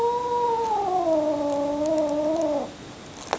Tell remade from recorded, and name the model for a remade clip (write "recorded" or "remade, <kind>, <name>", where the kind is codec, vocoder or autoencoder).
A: recorded